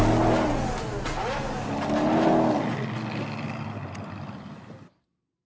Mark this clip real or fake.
real